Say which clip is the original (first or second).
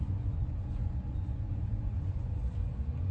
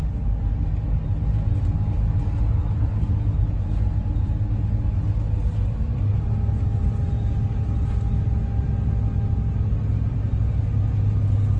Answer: second